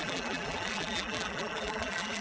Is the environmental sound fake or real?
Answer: fake